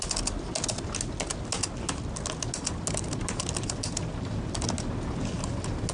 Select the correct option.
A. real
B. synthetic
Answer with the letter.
A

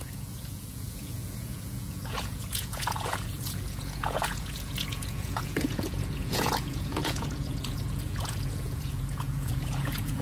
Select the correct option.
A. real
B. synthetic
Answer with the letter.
B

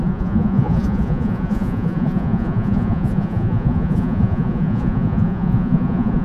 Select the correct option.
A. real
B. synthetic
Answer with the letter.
B